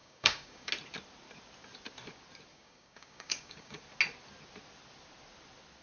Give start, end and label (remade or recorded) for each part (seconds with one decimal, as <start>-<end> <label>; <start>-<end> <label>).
0.0-0.7 remade; 0.7-2.5 recorded; 2.5-3.8 remade; 3.8-5.8 recorded

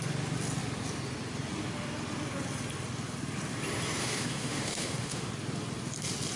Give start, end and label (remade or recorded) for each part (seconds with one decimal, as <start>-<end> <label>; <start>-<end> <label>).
0.0-4.0 recorded; 4.0-5.3 remade; 5.3-6.4 recorded

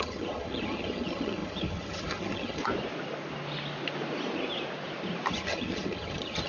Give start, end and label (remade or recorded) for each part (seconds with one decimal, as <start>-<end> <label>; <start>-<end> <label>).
0.0-2.6 remade; 2.6-5.3 recorded; 5.3-6.5 remade

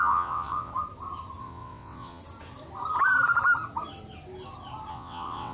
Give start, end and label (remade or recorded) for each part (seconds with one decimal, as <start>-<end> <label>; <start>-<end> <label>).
0.0-0.7 remade; 0.7-1.4 recorded; 1.4-2.2 remade; 2.2-4.9 recorded; 4.9-5.5 remade

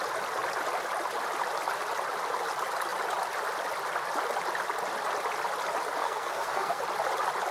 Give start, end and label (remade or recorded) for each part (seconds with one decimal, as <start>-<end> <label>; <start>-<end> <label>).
0.0-6.0 recorded; 6.0-6.8 remade; 6.8-7.5 recorded

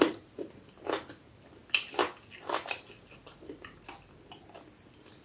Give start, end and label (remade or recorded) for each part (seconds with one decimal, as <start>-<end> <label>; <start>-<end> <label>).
0.0-5.2 recorded